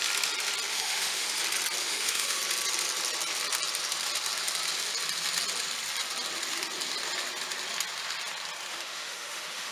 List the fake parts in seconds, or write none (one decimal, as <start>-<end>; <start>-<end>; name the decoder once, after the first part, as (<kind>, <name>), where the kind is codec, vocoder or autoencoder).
0.7-1.4 (autoencoder, DAC-VAE); 1.8-2.4; 8.7-9.7